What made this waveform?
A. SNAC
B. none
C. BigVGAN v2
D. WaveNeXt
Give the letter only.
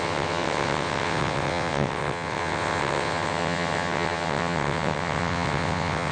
D